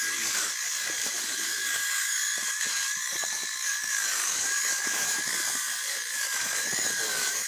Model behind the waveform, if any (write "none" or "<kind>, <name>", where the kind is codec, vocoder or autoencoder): codec, DAC